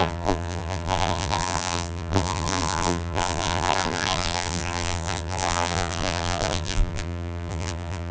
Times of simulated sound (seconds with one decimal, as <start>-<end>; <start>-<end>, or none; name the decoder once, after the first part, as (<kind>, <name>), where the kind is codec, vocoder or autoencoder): 0.0-8.1 (vocoder, BigVGAN v2)